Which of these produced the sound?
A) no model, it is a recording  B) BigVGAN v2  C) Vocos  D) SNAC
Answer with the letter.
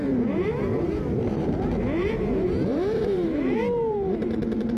B